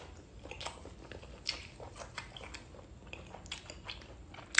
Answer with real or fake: real